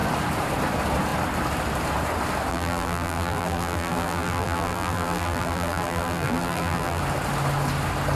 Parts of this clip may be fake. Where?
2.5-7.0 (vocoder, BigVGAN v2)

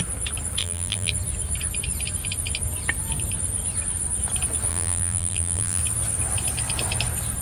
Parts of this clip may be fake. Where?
0.6-1.1 (vocoder, BigVGAN v2); 4.7-5.8